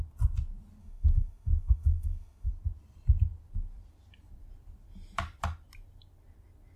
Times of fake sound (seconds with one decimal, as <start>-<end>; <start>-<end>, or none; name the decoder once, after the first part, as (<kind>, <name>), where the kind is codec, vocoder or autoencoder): 0.8-2.5 (autoencoder, DAC-VAE)